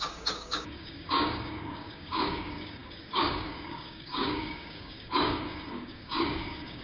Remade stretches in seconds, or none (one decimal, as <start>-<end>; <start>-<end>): 0.0-6.8

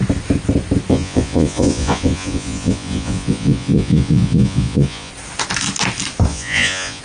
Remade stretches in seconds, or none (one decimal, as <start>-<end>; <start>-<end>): 0.9-5.1; 6.3-7.0